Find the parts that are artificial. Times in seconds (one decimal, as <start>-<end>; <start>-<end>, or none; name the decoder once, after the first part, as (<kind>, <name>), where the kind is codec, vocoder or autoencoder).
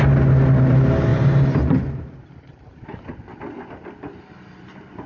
none